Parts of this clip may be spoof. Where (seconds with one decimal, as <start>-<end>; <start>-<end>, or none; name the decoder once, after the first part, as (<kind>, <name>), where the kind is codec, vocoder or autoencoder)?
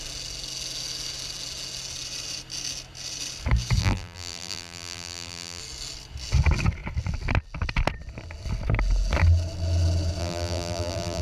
3.8-5.6 (vocoder, BigVGAN v2); 10.2-11.2